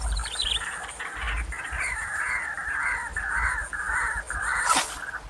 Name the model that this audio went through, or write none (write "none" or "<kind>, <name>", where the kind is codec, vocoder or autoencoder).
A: none